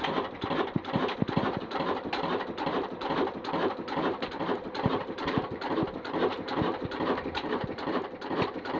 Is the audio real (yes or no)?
no